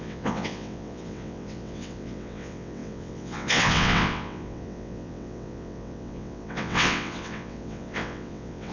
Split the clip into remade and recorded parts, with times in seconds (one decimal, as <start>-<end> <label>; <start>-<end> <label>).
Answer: 0.0-8.7 remade